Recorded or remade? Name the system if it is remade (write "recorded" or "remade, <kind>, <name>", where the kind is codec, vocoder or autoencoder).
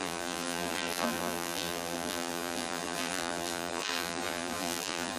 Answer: remade, vocoder, BigVGAN v2